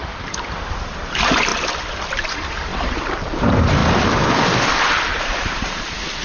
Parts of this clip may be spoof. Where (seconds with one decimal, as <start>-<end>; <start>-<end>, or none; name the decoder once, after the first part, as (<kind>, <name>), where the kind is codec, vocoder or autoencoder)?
0.0-1.5 (vocoder, BigVGAN v2); 2.1-2.7; 3.4-6.2